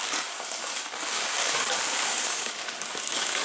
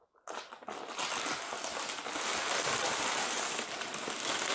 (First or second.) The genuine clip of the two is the second